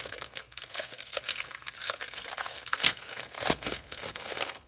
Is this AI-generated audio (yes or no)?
yes